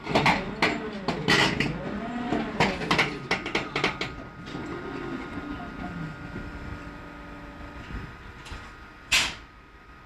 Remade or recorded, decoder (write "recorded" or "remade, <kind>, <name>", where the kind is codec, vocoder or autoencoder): recorded